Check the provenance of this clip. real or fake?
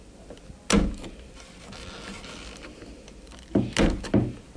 real